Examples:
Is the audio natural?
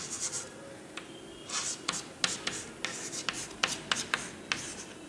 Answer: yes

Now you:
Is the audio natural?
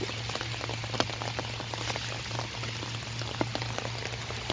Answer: yes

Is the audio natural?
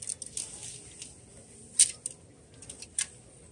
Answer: yes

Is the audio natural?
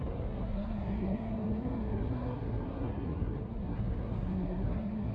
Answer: no